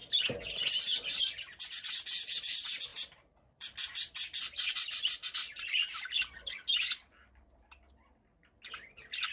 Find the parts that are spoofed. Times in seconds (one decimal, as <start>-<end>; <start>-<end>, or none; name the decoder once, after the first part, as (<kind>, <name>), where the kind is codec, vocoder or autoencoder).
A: 0.0-0.6 (vocoder, BigVGAN v2); 2.9-7.6